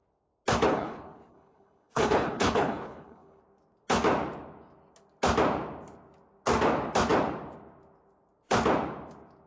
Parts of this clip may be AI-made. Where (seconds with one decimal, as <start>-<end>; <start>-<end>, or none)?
0.7-3.4